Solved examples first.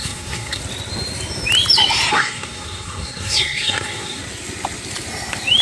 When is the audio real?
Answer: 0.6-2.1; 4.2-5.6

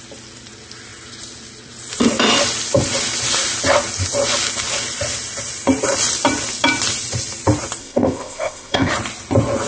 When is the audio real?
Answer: 0.0-7.8; 8.9-9.7

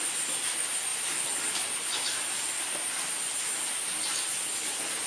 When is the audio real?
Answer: 0.0-5.1

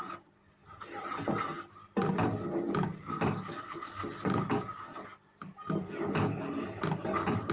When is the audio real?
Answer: 0.0-2.9; 3.9-5.4; 6.5-7.5

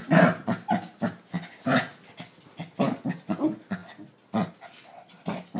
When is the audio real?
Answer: 0.0-5.6